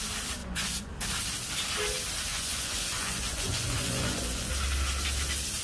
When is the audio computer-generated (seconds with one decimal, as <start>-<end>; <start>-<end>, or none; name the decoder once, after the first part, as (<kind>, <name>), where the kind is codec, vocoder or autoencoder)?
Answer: 0.4-0.9 (vocoder, Vocos); 2.3-4.5